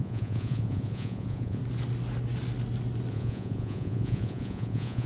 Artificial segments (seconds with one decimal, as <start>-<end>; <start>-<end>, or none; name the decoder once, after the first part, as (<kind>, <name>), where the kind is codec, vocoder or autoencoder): 0.0-1.6 (vocoder, Vocos); 3.1-5.1